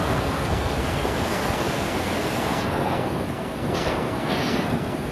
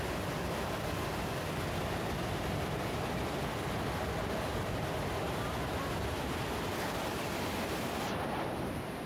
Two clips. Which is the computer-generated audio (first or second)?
first